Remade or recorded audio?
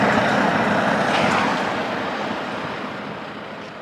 recorded